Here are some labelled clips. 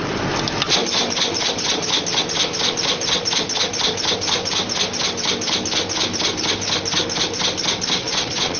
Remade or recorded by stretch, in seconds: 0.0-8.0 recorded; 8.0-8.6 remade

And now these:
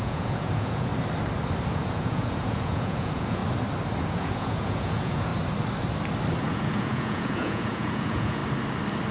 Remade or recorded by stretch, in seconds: 0.0-0.9 remade; 0.9-1.7 recorded; 1.7-3.4 remade; 3.4-4.1 recorded; 4.1-5.3 remade; 5.3-6.4 recorded; 6.4-8.4 remade; 8.4-9.1 recorded